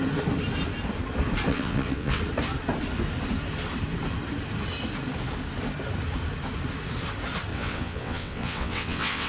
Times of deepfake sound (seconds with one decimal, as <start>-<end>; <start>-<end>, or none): 1.5-2.2; 7.5-9.3